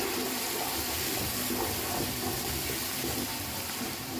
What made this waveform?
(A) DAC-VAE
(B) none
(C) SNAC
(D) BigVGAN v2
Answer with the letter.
B